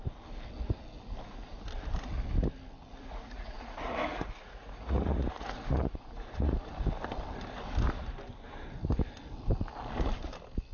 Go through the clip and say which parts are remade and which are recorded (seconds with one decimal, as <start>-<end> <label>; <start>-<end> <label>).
0.0-3.0 recorded; 3.0-6.7 remade; 6.7-10.7 recorded